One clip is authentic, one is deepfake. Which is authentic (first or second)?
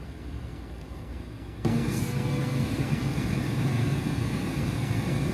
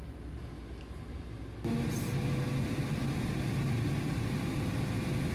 second